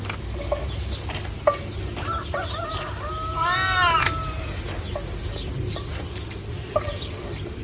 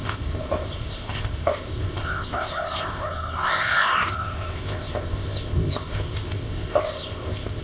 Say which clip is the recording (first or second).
first